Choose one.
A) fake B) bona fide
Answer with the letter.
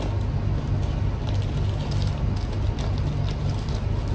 B